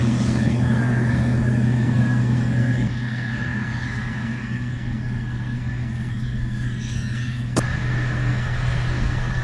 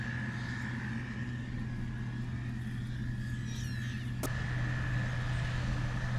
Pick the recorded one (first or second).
second